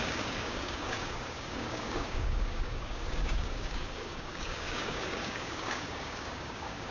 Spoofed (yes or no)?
yes